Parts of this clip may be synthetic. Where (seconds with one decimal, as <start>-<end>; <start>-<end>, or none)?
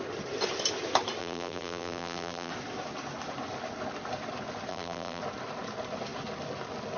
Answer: 1.2-2.5; 4.7-5.2